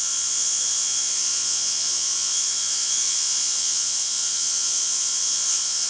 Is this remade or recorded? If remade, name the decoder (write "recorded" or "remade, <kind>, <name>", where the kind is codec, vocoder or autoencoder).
remade, vocoder, Vocos